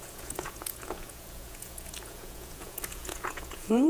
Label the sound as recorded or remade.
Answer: remade